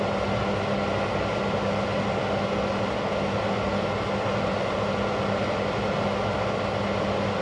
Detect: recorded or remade recorded